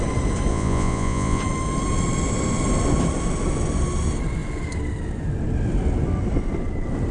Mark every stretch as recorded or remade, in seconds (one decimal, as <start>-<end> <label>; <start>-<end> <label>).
0.0-0.5 recorded; 0.5-1.4 remade; 1.4-7.1 recorded